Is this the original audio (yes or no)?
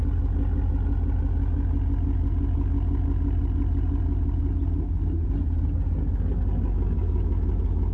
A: yes